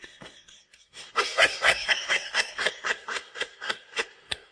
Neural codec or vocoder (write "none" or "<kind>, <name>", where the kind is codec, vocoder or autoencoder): codec, SNAC